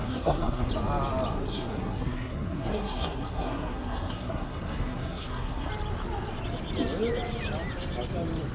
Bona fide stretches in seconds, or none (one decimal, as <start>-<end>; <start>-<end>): 0.7-1.5; 5.7-8.5